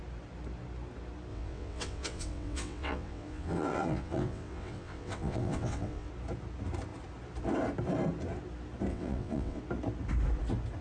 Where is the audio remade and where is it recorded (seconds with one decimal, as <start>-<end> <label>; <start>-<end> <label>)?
0.0-1.3 recorded; 1.3-6.1 remade; 6.1-8.9 recorded; 8.9-9.6 remade; 9.6-10.8 recorded